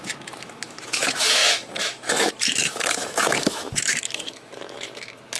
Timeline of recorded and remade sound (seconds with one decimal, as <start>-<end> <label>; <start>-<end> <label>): 0.0-5.4 remade